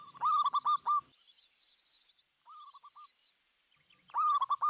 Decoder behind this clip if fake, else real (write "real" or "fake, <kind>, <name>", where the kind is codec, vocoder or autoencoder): real